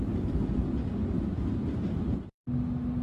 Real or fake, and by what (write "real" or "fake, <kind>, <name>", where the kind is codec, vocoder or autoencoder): real